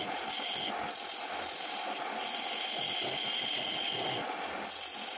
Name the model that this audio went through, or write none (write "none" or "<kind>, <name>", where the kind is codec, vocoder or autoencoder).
none